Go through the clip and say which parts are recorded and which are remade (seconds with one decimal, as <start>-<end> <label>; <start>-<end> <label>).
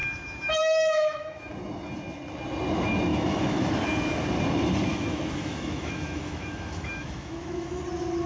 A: 0.0-1.5 remade; 1.5-3.1 recorded; 3.1-3.7 remade; 3.7-4.9 recorded; 4.9-7.8 remade; 7.8-8.3 recorded